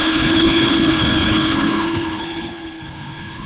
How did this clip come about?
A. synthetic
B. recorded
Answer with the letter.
A